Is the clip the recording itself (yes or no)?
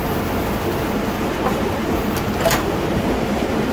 yes